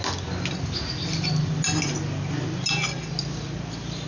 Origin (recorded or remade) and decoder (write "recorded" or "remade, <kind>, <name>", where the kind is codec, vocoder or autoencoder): recorded